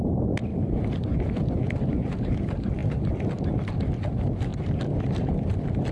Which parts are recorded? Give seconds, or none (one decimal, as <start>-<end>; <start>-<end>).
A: 0.0-0.5; 2.1-2.8; 3.8-4.5